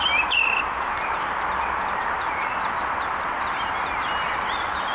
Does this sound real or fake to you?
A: real